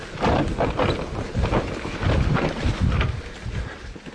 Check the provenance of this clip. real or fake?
real